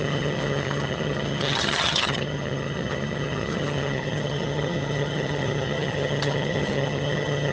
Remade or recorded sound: remade